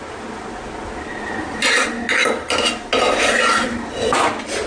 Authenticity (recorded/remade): recorded